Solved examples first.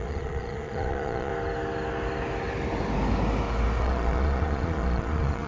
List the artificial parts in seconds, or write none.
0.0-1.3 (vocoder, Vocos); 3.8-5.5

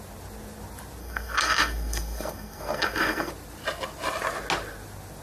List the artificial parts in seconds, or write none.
1.0-3.3 (codec, SNAC)

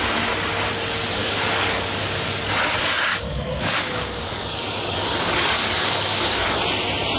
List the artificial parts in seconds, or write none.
1.2-2.5 (codec, DAC); 3.1-6.6

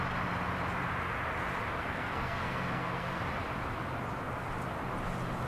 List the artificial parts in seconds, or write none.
1.8-3.2 (codec, SNAC)

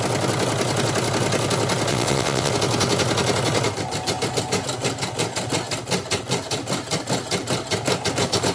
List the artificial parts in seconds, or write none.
1.9-2.5 (vocoder, WaveNeXt)

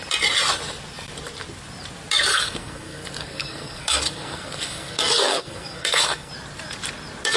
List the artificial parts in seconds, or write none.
2.3-6.3 (codec, SNAC)

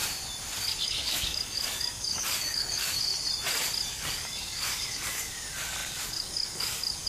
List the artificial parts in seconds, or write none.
0.8-3.1 (codec, DAC); 3.9-7.1